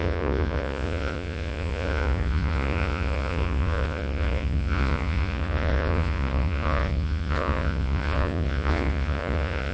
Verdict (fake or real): fake